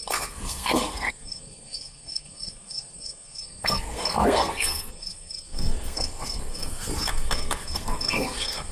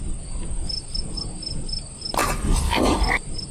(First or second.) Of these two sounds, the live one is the second